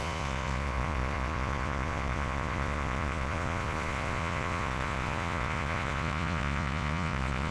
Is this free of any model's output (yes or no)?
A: no